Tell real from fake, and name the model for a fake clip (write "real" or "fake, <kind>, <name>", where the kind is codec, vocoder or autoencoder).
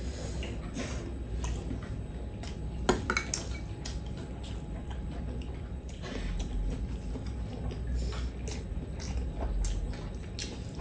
real